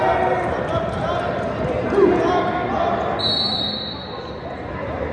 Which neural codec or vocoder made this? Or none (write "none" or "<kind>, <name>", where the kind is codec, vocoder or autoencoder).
none